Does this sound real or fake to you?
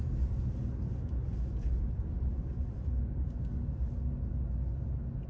real